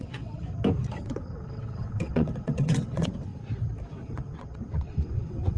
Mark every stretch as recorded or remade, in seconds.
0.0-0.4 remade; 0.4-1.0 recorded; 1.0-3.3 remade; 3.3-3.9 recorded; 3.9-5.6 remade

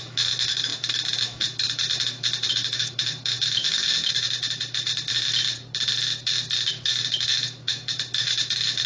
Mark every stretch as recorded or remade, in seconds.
0.0-5.1 remade; 5.1-6.7 recorded; 6.7-8.9 remade

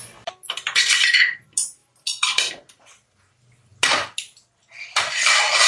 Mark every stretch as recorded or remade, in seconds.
0.0-5.7 recorded

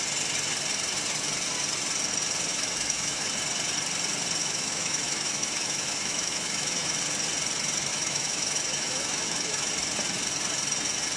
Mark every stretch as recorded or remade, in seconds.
0.0-2.5 recorded; 2.5-3.3 remade; 3.3-4.4 recorded; 4.4-7.0 remade; 7.0-7.9 recorded; 7.9-9.7 remade; 9.7-11.2 recorded

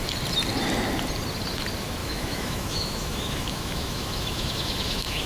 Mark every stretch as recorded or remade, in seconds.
0.0-2.0 recorded; 2.0-5.3 remade

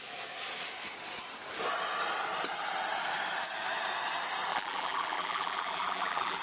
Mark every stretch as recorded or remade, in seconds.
0.0-4.5 recorded; 4.5-6.4 remade

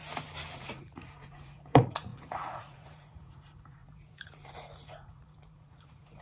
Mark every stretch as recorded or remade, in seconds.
0.0-0.5 recorded; 0.5-6.2 remade